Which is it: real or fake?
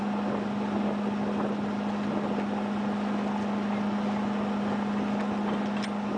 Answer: real